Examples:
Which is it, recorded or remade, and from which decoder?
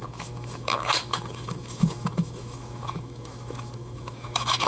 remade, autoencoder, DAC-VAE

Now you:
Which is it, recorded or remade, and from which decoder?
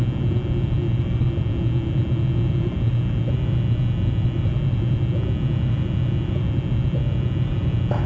recorded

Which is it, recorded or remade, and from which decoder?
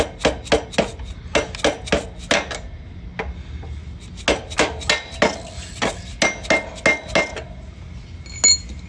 recorded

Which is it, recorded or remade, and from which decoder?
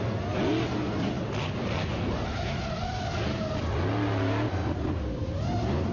recorded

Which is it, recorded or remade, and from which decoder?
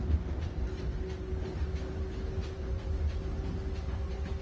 recorded